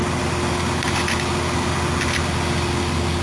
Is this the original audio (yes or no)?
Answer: yes